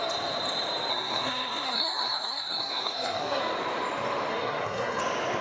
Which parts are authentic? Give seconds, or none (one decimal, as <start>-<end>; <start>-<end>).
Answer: 0.0-0.9; 3.4-4.3; 5.0-5.4